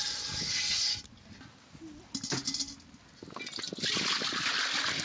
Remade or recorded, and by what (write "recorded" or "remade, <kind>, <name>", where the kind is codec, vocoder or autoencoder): recorded